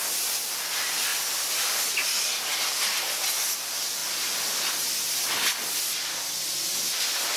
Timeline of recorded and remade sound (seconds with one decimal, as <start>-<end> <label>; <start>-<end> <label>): 0.0-1.1 recorded; 1.1-1.8 remade; 1.8-7.4 recorded